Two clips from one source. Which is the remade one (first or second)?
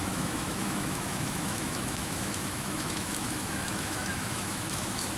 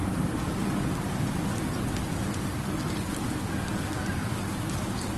first